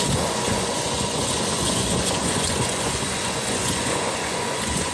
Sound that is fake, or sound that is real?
fake